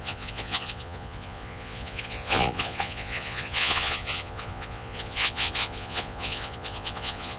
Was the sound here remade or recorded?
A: remade